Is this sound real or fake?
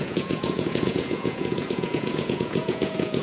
fake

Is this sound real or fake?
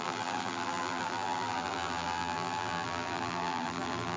fake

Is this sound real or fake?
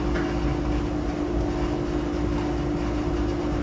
real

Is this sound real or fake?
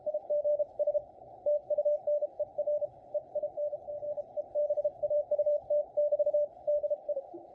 fake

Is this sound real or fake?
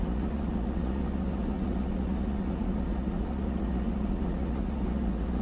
fake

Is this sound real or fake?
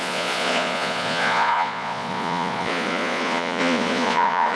fake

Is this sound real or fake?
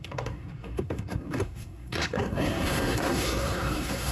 fake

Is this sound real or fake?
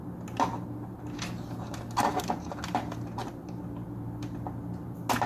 real